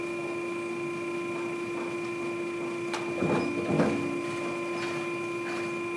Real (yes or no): yes